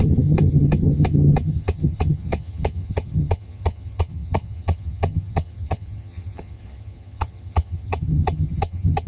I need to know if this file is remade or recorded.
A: remade